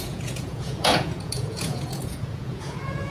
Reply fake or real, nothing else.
fake